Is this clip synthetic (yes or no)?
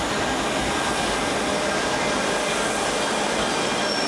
no